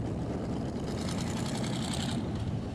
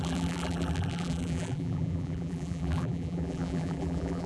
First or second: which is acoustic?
first